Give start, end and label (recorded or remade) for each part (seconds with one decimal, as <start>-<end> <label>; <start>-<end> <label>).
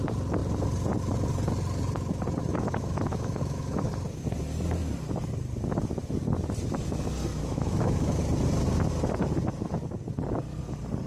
0.0-2.5 recorded; 2.5-3.9 remade; 3.9-7.3 recorded; 7.3-8.2 remade; 8.2-11.1 recorded